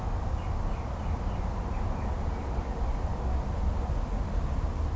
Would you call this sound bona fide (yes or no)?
yes